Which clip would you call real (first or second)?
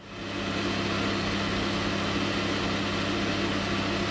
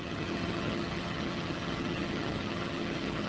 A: first